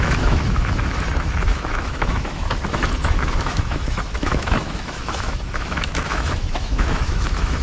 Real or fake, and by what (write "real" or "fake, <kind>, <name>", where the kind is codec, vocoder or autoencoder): fake, autoencoder, DAC-VAE